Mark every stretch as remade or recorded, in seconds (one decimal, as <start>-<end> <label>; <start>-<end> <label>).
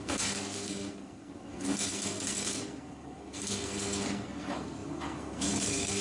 0.0-6.0 remade